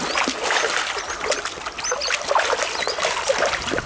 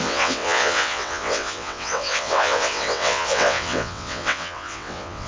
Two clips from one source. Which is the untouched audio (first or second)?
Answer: first